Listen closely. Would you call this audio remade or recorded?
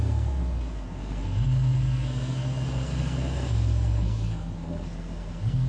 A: remade